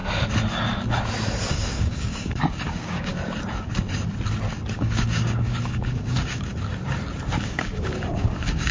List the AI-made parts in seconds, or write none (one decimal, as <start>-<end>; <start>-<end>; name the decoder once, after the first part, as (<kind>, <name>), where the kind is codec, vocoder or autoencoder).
1.5-3.1 (codec, DAC); 4.7-6.5; 7.4-8.7